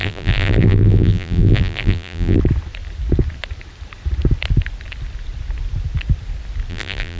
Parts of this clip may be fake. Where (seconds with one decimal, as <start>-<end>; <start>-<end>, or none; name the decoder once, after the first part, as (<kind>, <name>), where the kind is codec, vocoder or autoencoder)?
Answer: 0.0-2.4 (vocoder, BigVGAN v2); 6.7-7.2